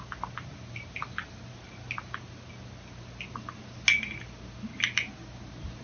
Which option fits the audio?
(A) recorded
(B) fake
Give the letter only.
A